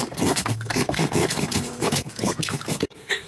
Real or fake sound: fake